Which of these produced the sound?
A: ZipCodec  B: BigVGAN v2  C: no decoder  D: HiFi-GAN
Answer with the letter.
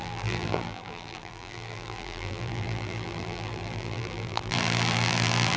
B